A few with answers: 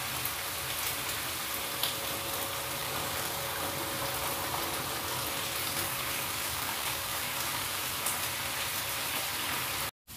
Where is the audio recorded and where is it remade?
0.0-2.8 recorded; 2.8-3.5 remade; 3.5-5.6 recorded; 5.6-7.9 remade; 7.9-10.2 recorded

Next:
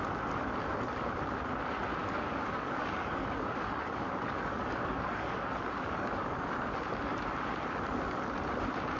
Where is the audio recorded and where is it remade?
0.0-2.0 recorded; 2.0-6.8 remade; 6.8-9.0 recorded